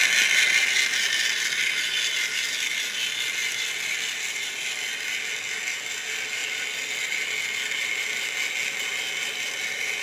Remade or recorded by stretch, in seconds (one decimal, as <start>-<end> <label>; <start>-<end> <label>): 0.0-10.0 recorded